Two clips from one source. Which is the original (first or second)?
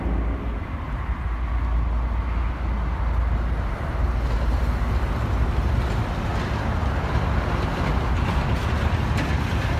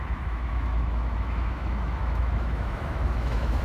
first